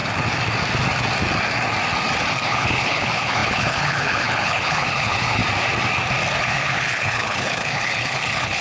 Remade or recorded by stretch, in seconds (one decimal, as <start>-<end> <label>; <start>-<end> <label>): 0.0-2.5 recorded; 2.5-5.4 remade; 5.4-6.4 recorded; 6.4-8.6 remade